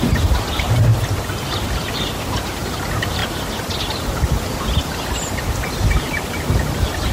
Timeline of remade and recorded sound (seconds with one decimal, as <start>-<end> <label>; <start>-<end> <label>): 0.0-7.1 recorded